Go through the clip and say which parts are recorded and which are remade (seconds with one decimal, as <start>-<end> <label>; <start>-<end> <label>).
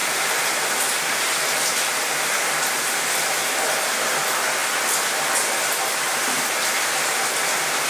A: 0.0-7.9 recorded